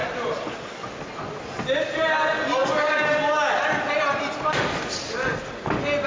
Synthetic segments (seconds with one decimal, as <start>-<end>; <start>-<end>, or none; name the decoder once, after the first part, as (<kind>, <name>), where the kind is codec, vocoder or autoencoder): none